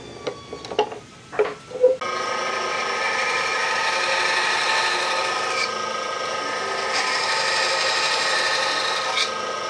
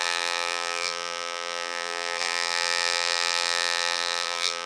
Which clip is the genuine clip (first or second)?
first